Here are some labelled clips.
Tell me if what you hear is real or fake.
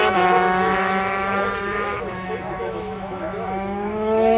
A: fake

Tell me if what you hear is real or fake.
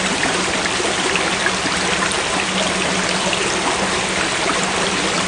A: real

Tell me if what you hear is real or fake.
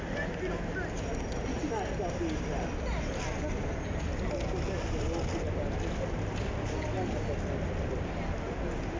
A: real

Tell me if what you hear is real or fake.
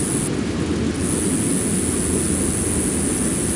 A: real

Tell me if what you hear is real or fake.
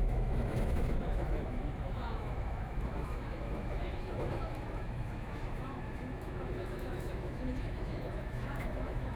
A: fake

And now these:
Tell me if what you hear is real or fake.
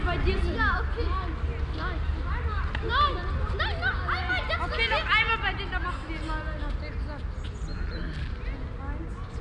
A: real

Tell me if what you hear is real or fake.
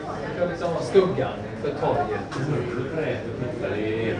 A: real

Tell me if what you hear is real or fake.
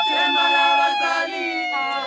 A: real